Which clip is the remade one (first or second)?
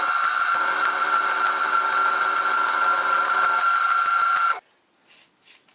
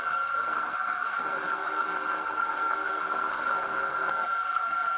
second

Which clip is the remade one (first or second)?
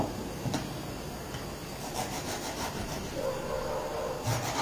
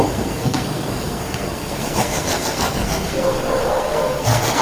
second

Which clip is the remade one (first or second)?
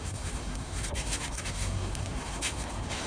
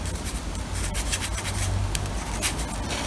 first